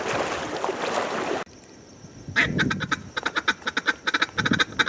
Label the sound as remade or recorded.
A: recorded